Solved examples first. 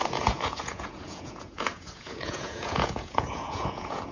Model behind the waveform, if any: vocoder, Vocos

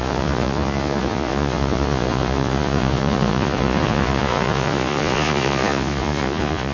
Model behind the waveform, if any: vocoder, Vocos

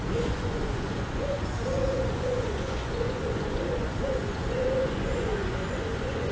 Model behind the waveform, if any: vocoder, Vocos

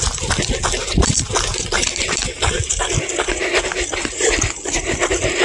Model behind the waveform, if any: none